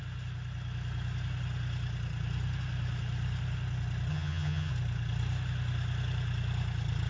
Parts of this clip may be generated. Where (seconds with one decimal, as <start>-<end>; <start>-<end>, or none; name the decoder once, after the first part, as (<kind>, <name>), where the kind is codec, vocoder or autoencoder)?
4.1-4.7 (vocoder, HiFi-GAN)